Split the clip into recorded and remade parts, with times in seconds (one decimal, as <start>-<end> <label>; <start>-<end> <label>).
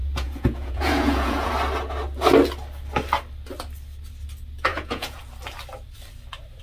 0.0-1.5 remade; 1.5-4.7 recorded; 4.7-5.2 remade; 5.2-6.6 recorded